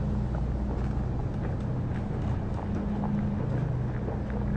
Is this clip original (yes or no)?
yes